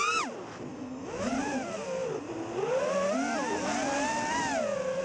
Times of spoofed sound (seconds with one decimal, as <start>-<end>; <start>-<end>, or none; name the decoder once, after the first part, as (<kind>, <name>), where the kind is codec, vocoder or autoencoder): 0.7-1.3 (autoencoder, DAC-VAE)